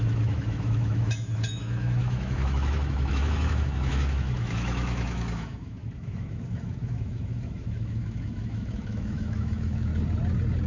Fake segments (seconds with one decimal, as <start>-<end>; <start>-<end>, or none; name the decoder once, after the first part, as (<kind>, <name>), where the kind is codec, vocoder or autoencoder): 0.0-9.9 (autoencoder, DAC-VAE)